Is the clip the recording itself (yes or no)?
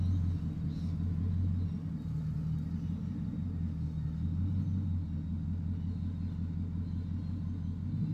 yes